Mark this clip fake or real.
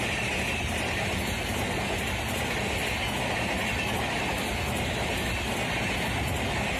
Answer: real